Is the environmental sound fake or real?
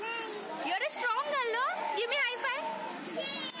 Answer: real